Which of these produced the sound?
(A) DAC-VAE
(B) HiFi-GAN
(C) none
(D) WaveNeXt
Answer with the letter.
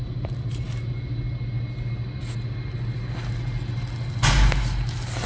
C